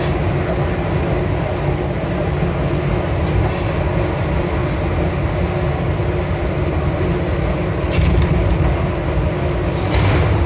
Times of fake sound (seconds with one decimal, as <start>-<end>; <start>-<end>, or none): none